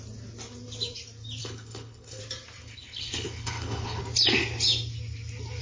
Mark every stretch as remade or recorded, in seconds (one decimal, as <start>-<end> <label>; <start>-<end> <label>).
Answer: 0.0-1.4 recorded; 1.4-2.2 remade; 2.2-2.6 recorded; 2.6-4.0 remade; 4.0-5.6 recorded